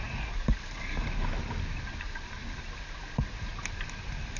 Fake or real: real